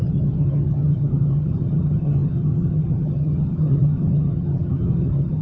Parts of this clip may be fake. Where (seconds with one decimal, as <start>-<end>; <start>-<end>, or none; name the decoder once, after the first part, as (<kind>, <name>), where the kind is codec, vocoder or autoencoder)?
0.0-5.4 (vocoder, HiFi-GAN)